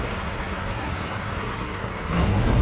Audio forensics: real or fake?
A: fake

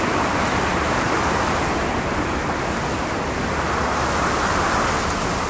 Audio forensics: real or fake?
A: real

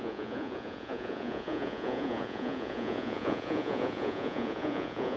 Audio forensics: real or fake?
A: fake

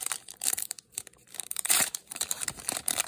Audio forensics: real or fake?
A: fake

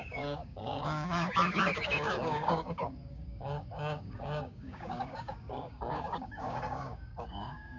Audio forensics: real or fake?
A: fake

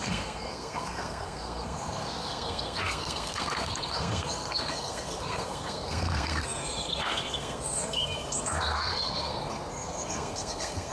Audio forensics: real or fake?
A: fake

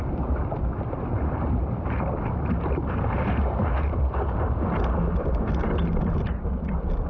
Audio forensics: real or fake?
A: real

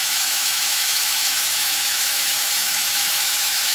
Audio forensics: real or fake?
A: fake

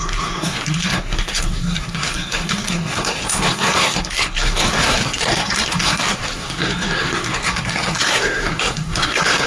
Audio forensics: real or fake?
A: fake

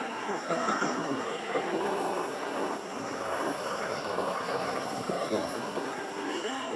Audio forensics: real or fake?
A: fake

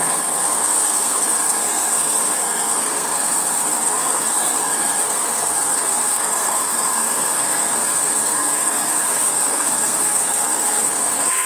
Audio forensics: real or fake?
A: fake